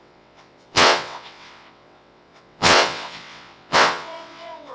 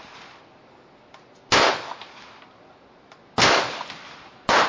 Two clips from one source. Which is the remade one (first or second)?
first